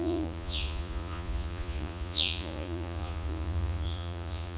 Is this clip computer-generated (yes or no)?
yes